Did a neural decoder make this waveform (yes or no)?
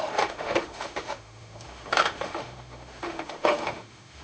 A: yes